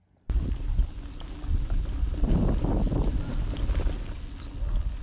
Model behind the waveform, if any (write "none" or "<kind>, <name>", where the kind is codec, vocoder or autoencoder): none